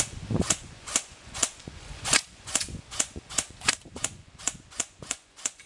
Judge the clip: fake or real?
fake